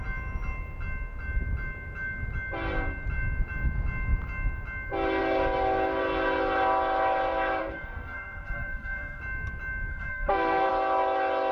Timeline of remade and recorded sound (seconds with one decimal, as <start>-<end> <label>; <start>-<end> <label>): 0.0-7.6 recorded; 7.6-9.2 remade; 9.2-9.9 recorded; 9.9-10.7 remade; 10.7-11.5 recorded